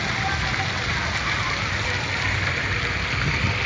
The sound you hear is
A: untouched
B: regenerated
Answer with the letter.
A